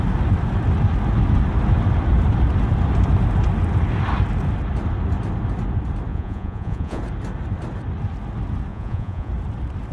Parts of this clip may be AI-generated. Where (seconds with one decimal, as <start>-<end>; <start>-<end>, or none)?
6.1-7.0; 8.7-9.3